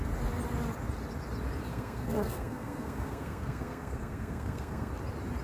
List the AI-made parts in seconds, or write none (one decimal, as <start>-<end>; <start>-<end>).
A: 1.7-4.9